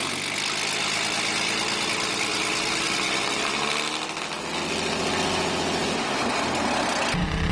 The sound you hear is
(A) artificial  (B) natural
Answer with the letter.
B